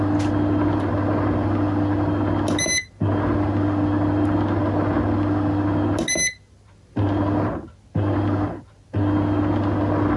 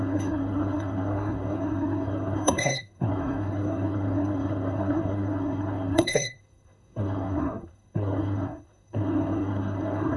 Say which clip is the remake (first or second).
second